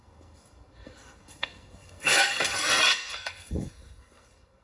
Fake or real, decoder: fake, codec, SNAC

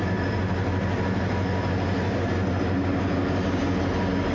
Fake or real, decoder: real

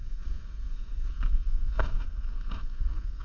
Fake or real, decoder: fake, codec, SNAC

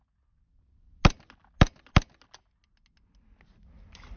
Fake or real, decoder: real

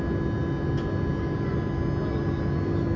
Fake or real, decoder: real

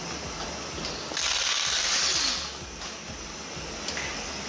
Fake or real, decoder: real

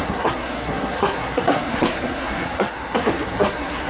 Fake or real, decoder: fake, codec, SNAC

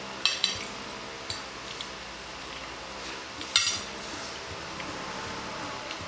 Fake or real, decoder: real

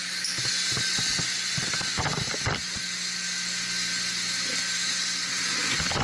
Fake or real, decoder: real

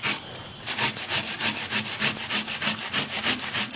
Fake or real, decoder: real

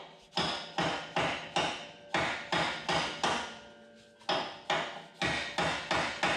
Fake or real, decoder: real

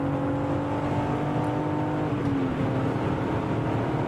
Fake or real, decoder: real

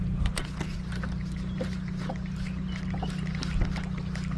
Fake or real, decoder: real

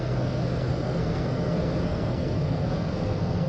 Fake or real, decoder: fake, codec, SNAC